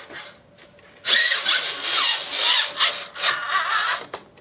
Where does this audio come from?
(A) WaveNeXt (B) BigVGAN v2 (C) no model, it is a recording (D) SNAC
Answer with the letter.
C